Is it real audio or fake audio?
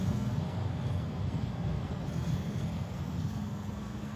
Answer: fake